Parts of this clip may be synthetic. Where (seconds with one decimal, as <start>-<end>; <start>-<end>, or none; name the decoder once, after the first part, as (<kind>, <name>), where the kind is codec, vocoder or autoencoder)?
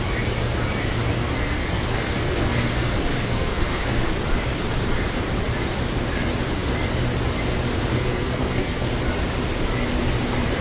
1.1-4.1 (codec, SNAC); 7.9-8.9